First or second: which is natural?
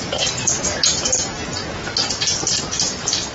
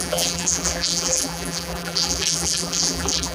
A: first